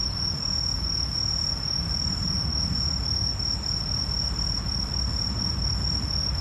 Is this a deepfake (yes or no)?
no